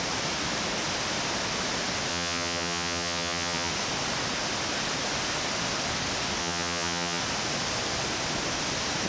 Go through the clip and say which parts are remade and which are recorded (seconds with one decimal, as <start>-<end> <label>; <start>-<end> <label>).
0.0-2.1 recorded; 2.1-3.7 remade; 3.7-6.4 recorded; 6.4-7.2 remade; 7.2-9.1 recorded